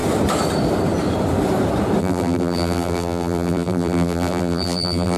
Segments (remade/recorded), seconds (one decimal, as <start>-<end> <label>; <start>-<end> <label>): 0.0-2.0 recorded; 2.0-5.2 remade